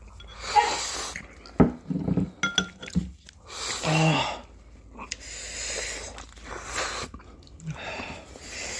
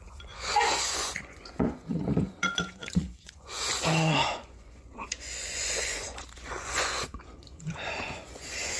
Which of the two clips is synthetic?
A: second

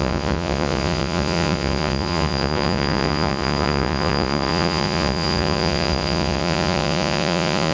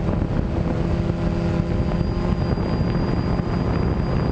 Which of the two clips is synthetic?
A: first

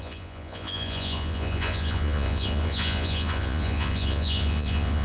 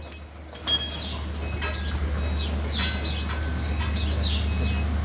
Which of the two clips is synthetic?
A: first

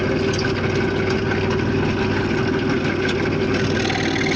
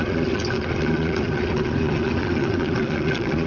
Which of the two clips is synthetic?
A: second